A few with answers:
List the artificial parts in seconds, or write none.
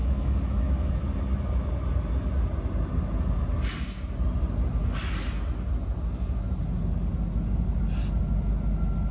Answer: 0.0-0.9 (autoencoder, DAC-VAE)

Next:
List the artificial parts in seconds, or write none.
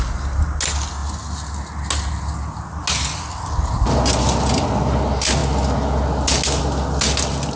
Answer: none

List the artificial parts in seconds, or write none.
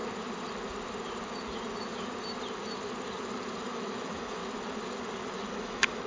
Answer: 3.7-4.4 (autoencoder, DAC-VAE); 5.5-6.1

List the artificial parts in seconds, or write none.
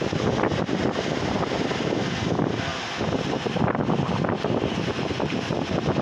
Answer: none